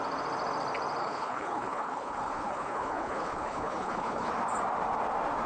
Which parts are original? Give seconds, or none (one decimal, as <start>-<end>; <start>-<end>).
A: 0.0-1.0; 4.3-5.5